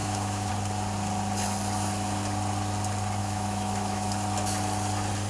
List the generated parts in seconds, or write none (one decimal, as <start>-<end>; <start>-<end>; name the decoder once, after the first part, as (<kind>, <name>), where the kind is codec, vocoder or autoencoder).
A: 0.0-0.5 (autoencoder, DAC-VAE); 3.2-4.1